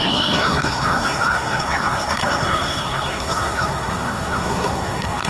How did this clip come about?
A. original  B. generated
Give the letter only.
B